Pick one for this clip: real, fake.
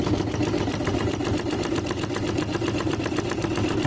real